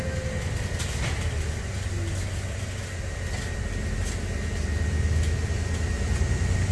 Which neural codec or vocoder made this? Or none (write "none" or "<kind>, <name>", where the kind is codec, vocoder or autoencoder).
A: none